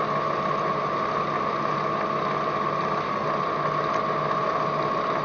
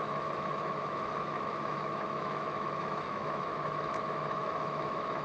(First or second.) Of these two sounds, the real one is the first